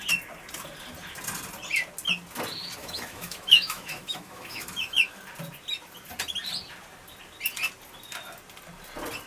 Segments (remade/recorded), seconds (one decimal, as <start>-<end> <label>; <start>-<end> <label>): 0.0-2.8 recorded; 2.8-5.2 remade; 5.2-9.3 recorded